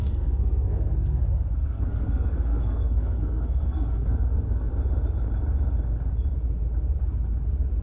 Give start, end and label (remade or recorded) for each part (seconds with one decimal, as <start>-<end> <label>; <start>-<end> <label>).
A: 0.0-1.2 remade; 1.2-1.6 recorded; 1.6-4.7 remade; 4.7-7.8 recorded